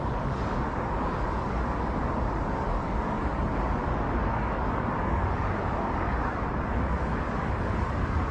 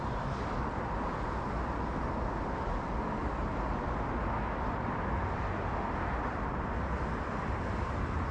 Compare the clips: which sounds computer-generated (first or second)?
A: first